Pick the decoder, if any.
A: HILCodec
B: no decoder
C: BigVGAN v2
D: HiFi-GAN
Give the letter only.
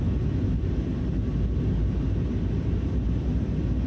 B